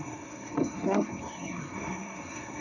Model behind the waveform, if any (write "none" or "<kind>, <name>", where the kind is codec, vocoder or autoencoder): codec, SNAC